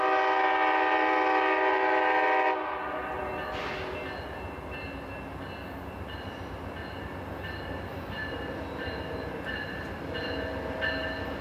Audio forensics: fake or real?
real